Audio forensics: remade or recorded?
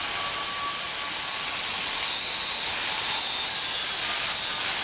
recorded